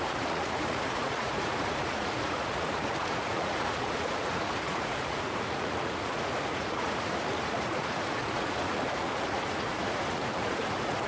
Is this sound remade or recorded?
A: remade